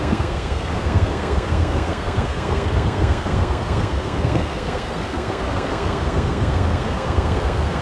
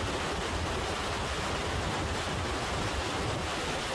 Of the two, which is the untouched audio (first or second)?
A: second